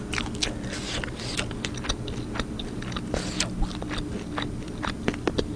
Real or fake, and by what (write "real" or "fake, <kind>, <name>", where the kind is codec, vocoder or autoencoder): real